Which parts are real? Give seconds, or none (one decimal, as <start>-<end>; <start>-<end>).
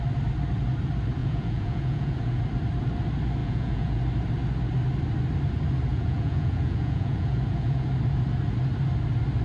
0.0-1.2; 2.4-3.4; 4.0-5.9; 7.9-9.4